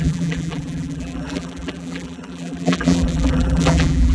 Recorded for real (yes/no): no